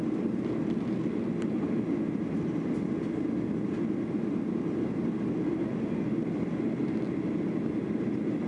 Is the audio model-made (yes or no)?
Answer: no